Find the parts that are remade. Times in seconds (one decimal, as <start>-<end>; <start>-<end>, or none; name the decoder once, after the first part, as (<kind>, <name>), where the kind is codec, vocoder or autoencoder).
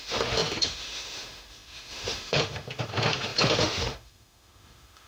0.0-5.1 (autoencoder, DAC-VAE)